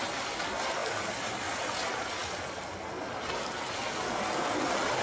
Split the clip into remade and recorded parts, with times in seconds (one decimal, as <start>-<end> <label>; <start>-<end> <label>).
0.0-5.0 recorded